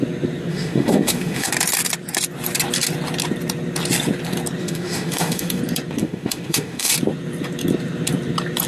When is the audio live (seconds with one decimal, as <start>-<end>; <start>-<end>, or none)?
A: 0.0-0.5; 1.5-4.6; 5.6-6.0; 6.9-8.7